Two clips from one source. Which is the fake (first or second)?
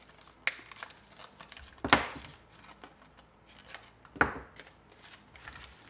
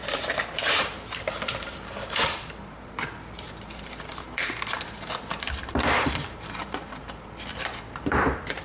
second